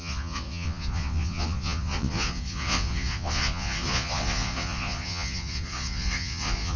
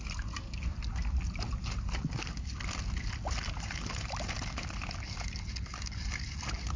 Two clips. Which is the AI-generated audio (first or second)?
first